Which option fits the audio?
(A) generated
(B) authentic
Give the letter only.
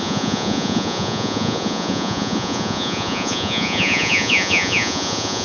A